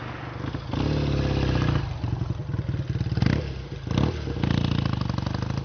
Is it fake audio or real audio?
real